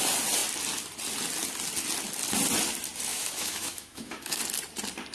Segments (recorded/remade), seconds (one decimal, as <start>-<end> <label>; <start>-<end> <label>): 0.0-3.1 recorded; 3.1-4.4 remade; 4.4-5.1 recorded